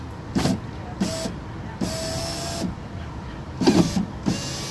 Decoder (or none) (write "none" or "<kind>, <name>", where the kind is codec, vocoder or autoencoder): none